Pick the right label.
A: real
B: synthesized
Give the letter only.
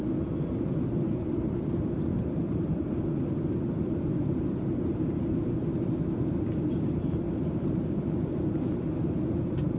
A